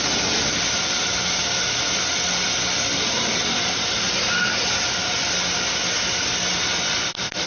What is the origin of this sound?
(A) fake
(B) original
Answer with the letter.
B